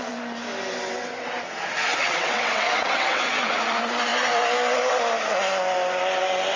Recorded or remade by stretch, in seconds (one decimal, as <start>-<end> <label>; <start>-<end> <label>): 0.0-1.9 recorded; 1.9-3.6 remade; 3.6-6.6 recorded